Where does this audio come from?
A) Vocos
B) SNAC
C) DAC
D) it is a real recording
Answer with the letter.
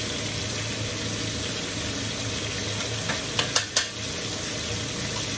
D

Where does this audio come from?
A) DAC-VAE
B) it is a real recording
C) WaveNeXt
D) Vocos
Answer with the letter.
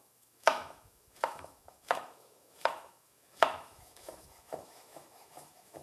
A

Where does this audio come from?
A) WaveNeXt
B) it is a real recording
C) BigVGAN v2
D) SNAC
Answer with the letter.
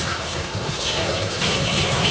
D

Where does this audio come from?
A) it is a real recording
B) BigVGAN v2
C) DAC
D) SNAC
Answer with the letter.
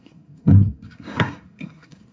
D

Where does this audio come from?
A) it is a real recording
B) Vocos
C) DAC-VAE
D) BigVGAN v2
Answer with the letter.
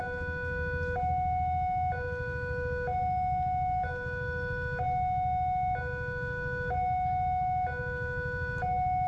A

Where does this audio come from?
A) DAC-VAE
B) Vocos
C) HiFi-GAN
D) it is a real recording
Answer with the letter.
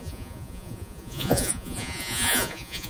B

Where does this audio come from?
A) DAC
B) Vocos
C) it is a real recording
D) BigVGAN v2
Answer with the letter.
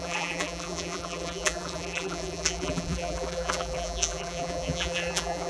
D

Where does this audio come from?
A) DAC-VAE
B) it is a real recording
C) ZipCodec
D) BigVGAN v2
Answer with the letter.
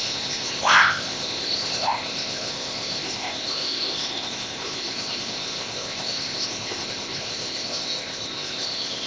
C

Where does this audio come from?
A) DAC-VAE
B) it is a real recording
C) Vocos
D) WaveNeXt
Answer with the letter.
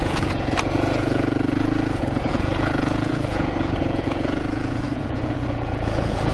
C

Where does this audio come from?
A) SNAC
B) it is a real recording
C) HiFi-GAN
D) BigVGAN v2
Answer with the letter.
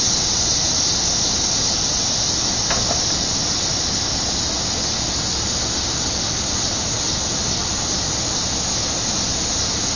B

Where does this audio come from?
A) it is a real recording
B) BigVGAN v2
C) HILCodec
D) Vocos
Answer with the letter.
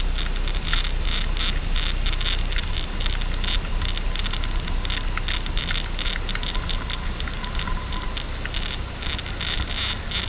A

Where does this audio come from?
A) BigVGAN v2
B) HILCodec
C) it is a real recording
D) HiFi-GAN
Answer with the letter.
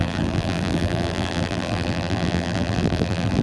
A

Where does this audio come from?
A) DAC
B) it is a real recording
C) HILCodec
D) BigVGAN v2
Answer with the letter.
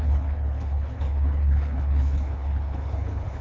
C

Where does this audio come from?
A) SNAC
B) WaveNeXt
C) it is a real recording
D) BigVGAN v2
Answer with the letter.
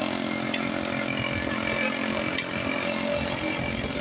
C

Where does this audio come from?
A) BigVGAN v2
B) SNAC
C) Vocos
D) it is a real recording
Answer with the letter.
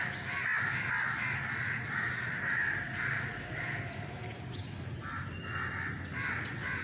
D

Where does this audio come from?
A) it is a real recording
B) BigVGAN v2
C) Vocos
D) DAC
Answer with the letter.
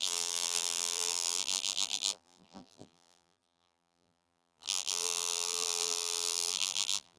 B